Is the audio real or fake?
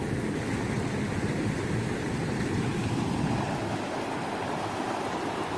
real